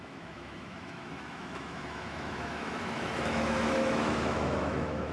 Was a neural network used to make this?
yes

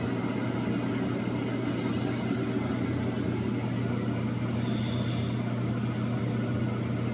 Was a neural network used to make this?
no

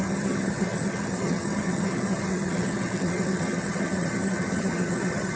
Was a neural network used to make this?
yes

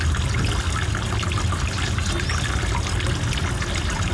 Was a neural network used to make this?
no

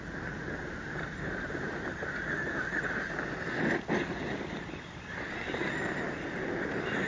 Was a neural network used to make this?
no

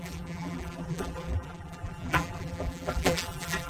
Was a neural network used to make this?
yes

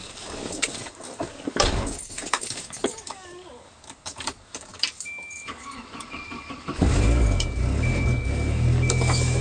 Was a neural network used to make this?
yes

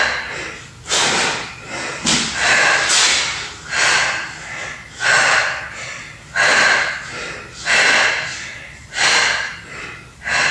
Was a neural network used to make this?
no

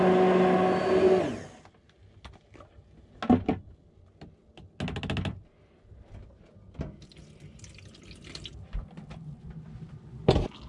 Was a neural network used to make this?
no